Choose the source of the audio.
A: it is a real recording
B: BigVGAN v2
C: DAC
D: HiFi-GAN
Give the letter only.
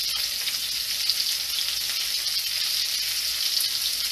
A